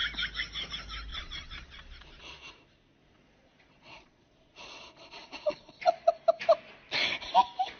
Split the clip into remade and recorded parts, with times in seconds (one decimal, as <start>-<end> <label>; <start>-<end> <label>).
0.0-1.1 recorded; 1.1-2.5 remade; 2.5-3.0 recorded; 3.0-6.1 remade; 6.1-7.8 recorded